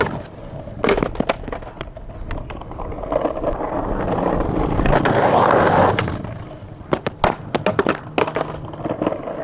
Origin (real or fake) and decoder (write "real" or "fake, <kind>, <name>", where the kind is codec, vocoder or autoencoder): real